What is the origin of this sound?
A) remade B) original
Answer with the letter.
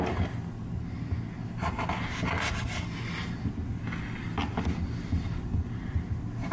B